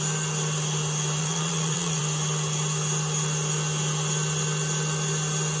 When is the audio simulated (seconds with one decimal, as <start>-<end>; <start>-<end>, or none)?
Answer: 1.2-2.0